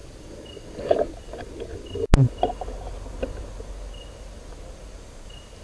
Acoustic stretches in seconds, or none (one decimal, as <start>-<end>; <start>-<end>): 0.0-5.6